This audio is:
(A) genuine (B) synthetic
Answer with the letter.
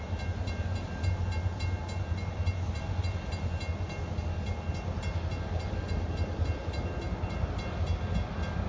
A